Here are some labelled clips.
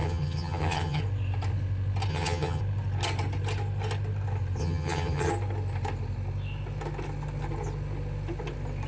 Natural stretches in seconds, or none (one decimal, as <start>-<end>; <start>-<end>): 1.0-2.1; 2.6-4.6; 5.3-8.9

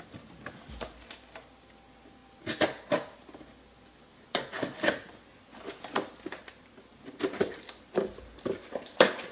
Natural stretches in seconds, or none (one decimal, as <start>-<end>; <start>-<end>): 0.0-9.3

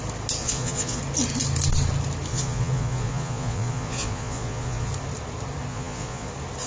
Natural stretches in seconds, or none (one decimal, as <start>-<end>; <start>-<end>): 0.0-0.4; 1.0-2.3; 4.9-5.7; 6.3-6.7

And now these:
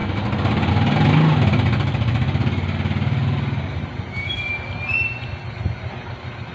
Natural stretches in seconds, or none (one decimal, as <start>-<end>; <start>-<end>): 0.7-6.5

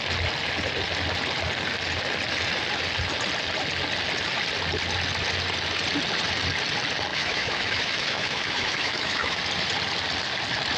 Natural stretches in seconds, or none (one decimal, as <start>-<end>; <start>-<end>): 0.0-7.1; 9.4-10.8

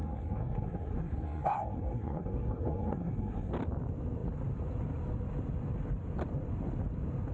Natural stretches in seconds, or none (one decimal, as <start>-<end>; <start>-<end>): 3.5-7.3